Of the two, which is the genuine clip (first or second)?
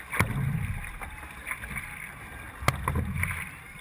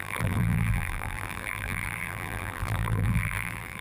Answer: first